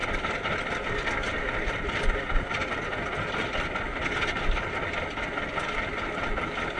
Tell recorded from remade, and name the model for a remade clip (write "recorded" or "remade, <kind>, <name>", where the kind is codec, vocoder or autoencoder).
recorded